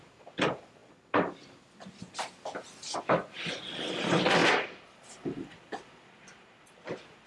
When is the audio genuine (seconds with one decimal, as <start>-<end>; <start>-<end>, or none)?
0.8-3.0